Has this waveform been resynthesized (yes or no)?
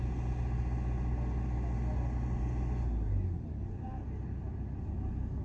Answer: no